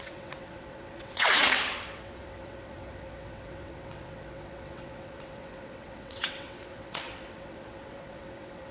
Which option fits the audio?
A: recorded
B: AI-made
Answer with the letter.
B